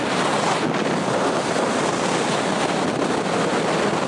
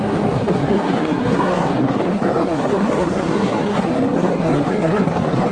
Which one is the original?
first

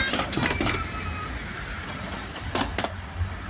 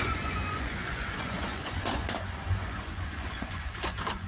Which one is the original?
first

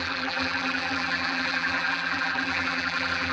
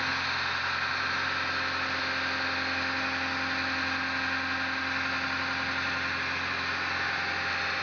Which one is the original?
second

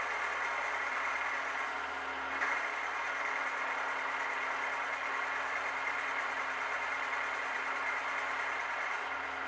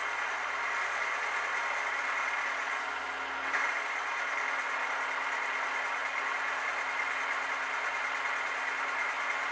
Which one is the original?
second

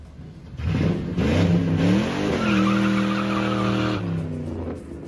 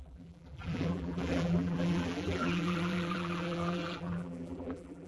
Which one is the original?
first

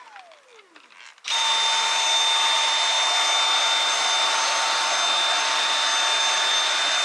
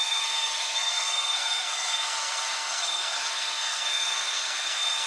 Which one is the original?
first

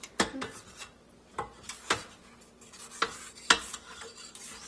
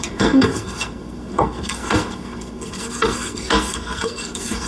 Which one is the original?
first